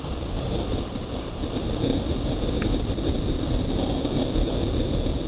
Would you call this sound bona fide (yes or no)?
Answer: yes